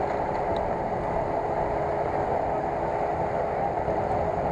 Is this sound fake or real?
real